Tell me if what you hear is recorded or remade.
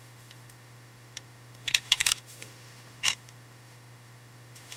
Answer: remade